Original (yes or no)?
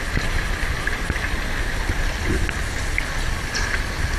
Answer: yes